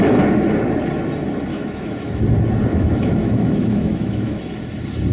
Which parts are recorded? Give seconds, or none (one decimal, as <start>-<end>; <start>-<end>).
0.0-1.5; 2.2-2.7; 4.4-5.1